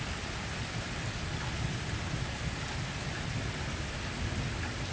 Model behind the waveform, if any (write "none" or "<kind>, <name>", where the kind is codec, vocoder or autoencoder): none